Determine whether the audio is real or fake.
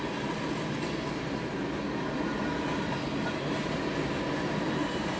real